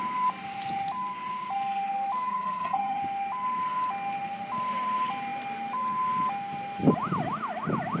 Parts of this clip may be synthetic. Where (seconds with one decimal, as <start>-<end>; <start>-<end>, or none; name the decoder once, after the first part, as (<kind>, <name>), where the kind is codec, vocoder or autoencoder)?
2.3-3.0 (vocoder, HiFi-GAN)